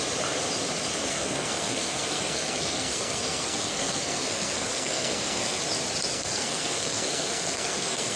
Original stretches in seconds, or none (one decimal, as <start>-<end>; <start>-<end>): 0.0-1.1; 5.6-6.1